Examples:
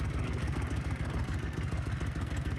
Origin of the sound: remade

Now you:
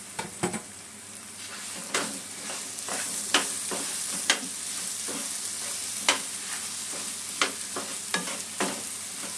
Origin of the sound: recorded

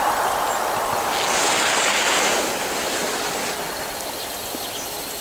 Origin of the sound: recorded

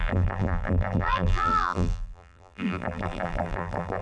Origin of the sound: remade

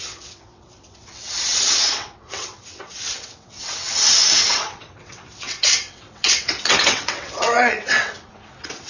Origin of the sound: remade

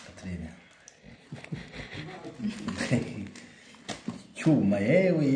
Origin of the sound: recorded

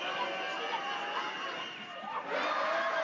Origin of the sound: recorded